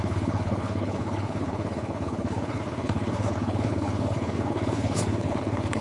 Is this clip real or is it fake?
fake